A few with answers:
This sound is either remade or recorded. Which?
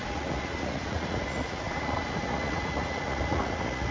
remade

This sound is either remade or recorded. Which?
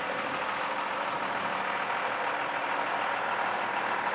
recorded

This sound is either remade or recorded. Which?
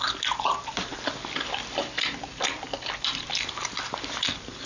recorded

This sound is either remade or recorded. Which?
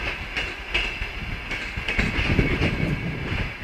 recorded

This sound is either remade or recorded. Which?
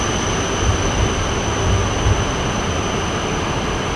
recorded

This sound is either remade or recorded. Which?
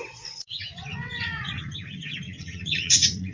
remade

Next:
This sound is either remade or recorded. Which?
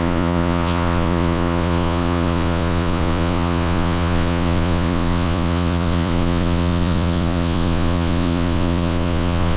remade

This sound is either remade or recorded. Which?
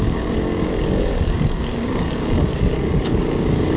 remade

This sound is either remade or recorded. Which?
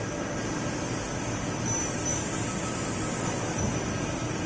recorded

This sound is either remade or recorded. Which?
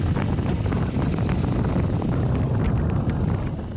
recorded